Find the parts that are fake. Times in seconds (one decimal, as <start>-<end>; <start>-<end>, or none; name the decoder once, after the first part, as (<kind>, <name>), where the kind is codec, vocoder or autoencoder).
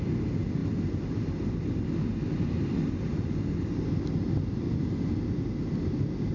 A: none